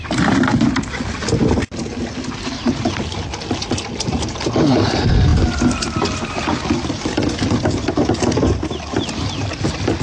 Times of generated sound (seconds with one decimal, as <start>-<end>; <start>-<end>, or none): none